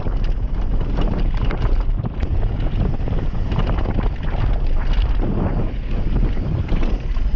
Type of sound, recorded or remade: recorded